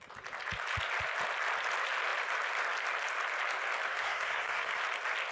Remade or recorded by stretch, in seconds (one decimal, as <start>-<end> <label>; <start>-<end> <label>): 0.0-3.9 recorded; 3.9-4.7 remade; 4.7-5.3 recorded